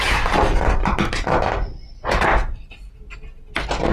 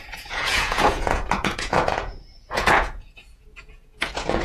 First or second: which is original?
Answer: first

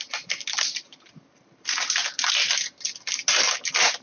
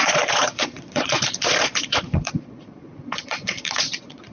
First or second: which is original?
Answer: first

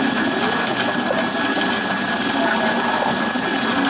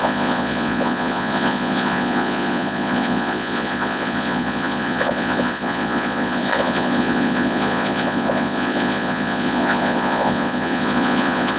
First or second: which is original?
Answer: first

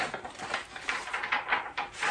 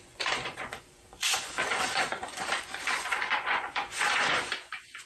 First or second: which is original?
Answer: first